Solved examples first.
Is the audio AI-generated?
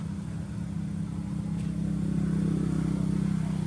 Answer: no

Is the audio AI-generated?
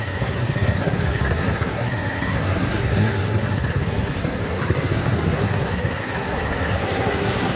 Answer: yes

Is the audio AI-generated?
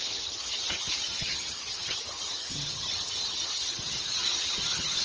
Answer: yes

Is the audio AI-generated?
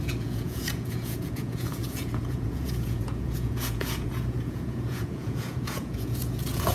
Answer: yes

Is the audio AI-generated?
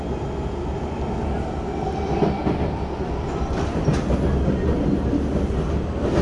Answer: no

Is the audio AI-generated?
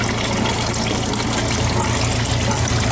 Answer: no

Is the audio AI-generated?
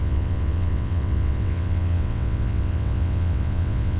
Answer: yes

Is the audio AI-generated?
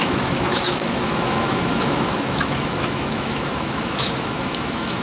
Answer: yes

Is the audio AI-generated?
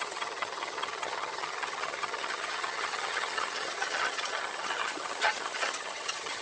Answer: yes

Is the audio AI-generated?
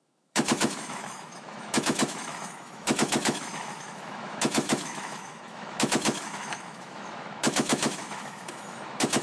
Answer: yes